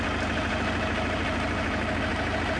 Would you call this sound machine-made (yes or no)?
no